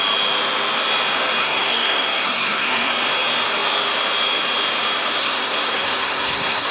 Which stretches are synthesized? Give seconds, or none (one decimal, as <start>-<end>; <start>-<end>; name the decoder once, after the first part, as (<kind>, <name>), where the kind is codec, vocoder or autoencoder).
1.4-2.9 (codec, SNAC); 5.2-6.7